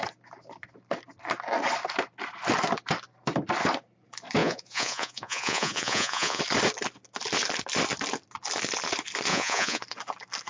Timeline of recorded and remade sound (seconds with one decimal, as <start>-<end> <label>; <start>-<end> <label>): 0.0-4.4 recorded; 4.4-6.4 remade; 6.4-9.3 recorded; 9.3-9.8 remade; 9.8-10.5 recorded